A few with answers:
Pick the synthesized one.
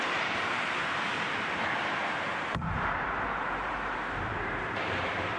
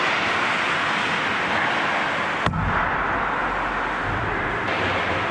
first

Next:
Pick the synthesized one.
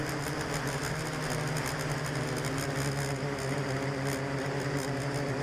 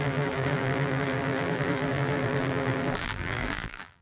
second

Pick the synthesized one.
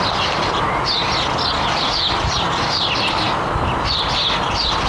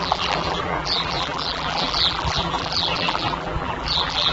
second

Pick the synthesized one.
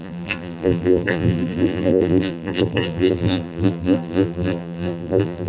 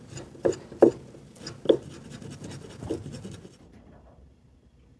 first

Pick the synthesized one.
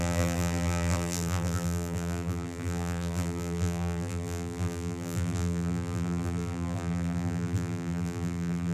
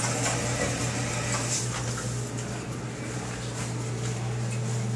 first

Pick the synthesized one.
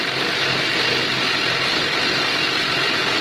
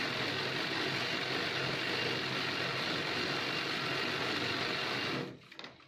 first